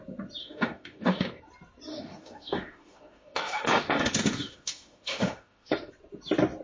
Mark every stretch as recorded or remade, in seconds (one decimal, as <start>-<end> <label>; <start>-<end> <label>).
0.0-0.4 recorded; 0.4-1.4 remade; 1.4-1.9 recorded; 1.9-5.9 remade; 5.9-6.6 recorded